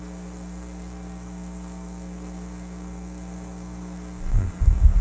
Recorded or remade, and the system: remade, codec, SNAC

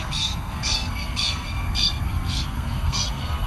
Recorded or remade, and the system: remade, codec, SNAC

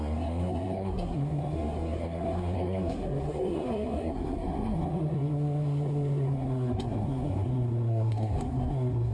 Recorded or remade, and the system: remade, codec, SNAC